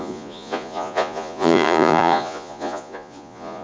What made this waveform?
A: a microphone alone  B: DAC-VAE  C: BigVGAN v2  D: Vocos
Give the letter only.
D